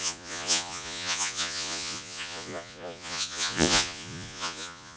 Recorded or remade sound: remade